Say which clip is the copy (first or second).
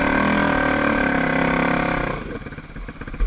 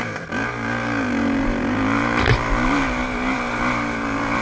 second